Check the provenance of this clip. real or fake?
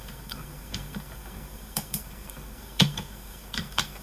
fake